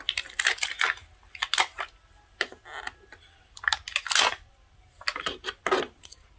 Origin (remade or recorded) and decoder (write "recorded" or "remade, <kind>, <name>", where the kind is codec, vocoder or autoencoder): recorded